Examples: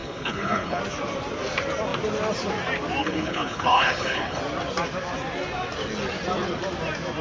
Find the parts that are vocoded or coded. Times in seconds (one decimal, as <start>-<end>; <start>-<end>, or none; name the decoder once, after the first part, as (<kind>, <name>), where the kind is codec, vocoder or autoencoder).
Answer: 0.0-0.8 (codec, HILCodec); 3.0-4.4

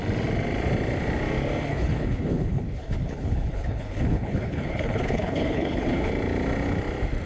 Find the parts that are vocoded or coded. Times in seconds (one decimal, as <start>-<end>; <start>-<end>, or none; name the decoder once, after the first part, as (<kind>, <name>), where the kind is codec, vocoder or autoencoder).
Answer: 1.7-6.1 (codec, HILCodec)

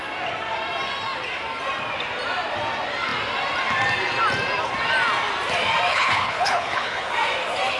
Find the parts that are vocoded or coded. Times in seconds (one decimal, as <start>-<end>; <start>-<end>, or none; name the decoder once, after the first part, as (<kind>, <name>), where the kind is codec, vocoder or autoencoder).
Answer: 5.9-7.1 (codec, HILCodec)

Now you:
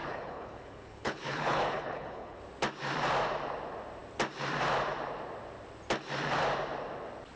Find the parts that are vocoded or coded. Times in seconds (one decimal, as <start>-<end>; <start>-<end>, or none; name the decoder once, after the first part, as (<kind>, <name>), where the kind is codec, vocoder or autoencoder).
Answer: 0.0-2.4 (codec, HILCodec)